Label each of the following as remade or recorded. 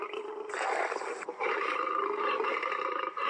remade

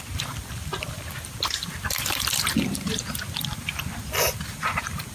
recorded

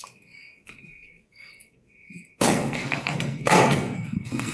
remade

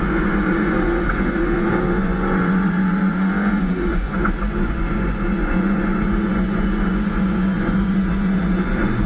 remade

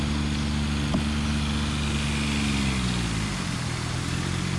recorded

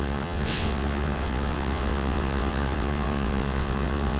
remade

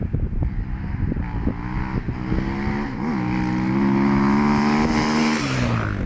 recorded